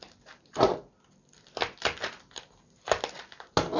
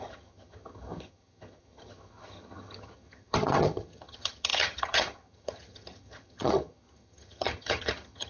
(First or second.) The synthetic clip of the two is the second